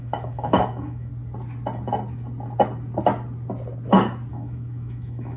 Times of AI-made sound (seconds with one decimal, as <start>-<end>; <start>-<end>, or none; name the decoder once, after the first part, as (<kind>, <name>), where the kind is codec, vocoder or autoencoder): 0.0-1.1 (autoencoder, DAC-VAE); 4.3-5.4